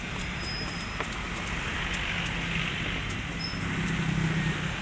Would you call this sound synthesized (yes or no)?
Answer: no